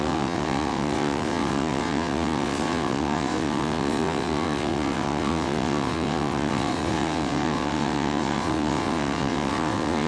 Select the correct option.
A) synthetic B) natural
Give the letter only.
A